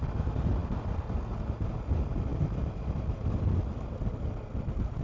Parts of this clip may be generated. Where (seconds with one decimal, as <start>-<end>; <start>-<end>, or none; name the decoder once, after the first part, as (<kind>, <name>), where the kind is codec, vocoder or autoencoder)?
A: none